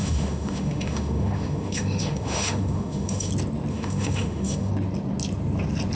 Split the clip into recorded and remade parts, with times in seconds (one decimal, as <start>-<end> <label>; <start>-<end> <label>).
0.0-3.3 remade; 3.3-3.7 recorded; 3.7-4.7 remade; 4.7-6.0 recorded